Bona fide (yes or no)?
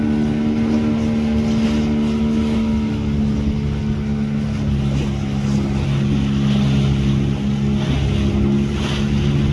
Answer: yes